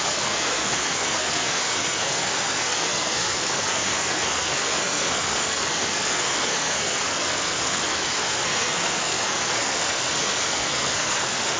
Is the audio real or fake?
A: fake